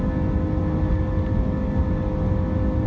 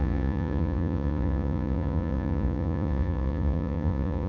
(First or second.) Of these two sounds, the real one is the first